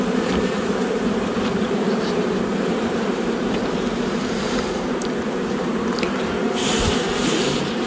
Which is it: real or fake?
fake